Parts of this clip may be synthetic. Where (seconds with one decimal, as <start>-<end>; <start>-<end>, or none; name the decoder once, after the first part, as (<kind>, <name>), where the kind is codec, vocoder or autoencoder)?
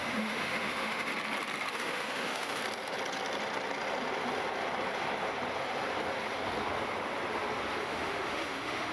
0.0-1.1 (autoencoder, DAC-VAE); 1.7-2.6; 7.8-8.9